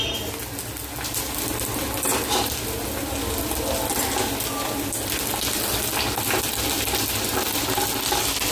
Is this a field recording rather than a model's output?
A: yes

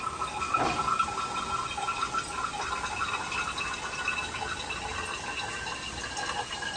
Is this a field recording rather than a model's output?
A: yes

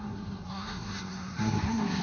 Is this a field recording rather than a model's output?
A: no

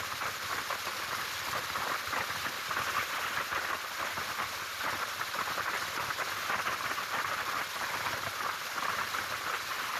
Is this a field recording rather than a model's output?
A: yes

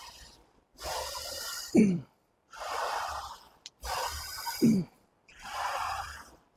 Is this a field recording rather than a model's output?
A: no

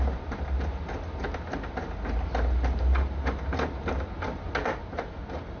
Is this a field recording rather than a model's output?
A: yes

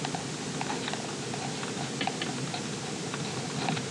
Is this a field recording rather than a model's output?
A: yes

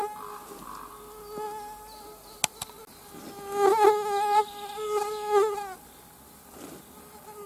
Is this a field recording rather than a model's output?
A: yes